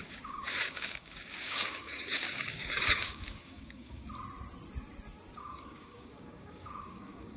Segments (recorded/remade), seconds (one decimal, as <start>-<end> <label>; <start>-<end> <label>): 0.0-4.0 remade; 4.0-5.4 recorded; 5.4-7.4 remade